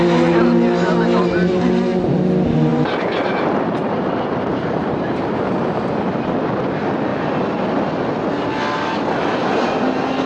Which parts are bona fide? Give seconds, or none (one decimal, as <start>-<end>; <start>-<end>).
0.0-2.7; 5.2-10.3